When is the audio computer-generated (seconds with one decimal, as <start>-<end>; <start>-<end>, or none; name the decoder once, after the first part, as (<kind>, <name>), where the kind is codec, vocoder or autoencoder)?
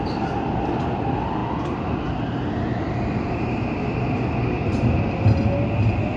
none